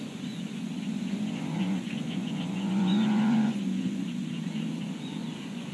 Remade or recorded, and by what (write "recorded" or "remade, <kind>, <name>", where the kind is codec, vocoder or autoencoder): remade, vocoder, Vocos